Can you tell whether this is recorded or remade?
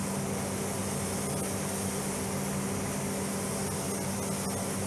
recorded